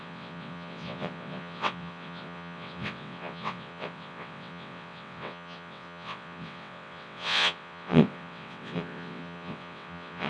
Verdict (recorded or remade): remade